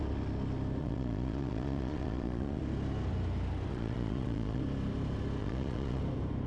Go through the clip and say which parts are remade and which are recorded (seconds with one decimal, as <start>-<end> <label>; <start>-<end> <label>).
0.0-0.8 recorded; 0.8-2.6 remade; 2.6-3.7 recorded; 3.7-4.6 remade; 4.6-5.4 recorded; 5.4-6.0 remade; 6.0-6.5 recorded